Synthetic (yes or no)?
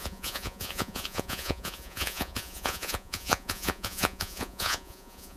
yes